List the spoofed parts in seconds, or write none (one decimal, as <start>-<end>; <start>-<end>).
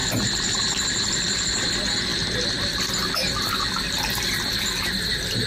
0.0-1.7